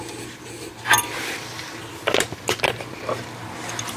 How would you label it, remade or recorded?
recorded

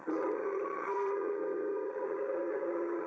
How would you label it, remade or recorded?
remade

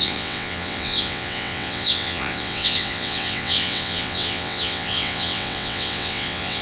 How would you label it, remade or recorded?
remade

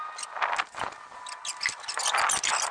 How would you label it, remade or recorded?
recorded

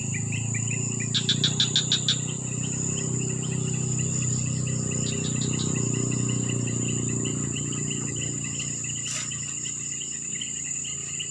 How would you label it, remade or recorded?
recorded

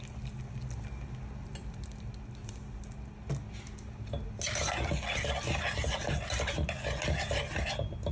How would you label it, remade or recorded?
recorded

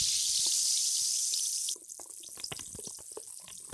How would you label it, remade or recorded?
recorded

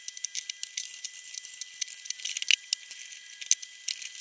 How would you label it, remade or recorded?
recorded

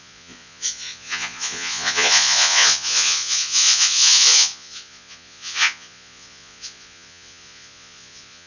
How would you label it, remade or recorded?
remade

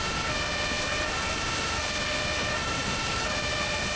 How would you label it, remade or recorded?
recorded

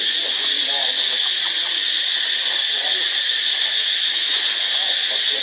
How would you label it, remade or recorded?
remade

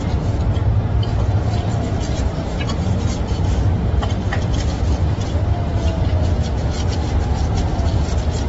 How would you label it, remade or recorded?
recorded